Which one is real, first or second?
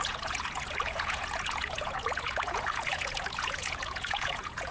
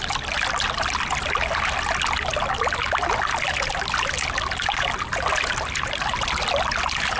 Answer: second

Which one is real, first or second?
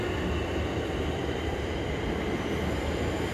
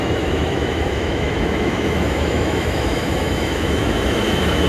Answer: first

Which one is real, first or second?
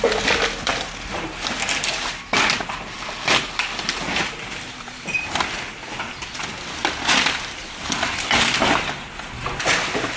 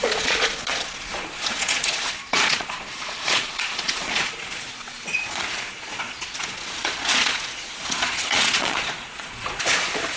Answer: first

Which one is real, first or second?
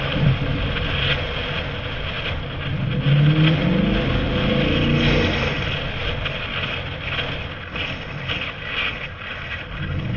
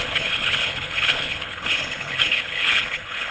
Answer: first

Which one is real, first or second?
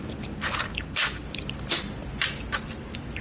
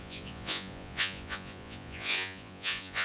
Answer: first